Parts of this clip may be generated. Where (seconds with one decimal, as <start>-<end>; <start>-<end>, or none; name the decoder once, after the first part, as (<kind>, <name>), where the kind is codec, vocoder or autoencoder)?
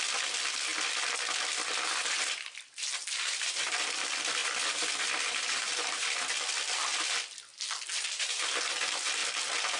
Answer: 0.0-0.7 (vocoder, BigVGAN v2); 1.7-7.5; 8.2-9.2